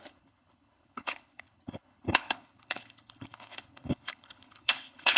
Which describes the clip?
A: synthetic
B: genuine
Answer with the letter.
A